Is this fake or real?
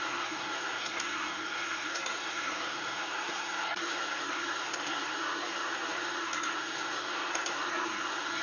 fake